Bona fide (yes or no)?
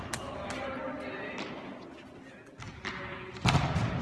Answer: yes